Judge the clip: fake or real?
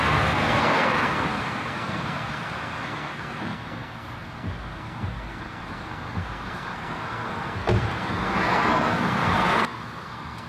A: fake